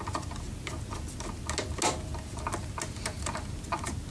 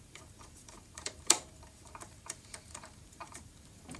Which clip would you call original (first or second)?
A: first